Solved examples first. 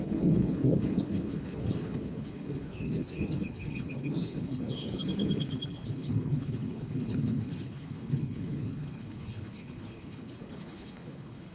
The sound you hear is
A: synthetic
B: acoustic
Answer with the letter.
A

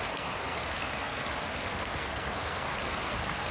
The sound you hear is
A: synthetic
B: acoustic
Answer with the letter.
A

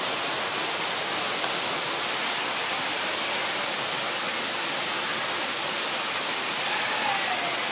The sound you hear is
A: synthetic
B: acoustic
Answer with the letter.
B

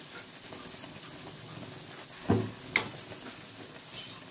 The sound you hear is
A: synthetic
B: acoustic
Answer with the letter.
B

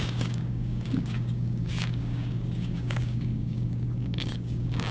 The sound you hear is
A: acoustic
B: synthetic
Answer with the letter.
B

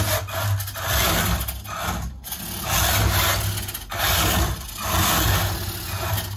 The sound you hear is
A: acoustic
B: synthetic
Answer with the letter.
A